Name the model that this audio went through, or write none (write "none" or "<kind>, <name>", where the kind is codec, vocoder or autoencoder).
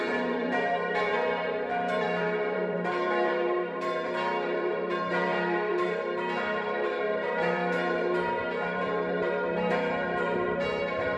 vocoder, BigVGAN v2